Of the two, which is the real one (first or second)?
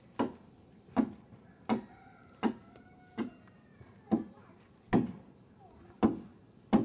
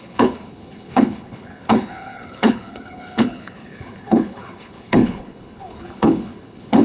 first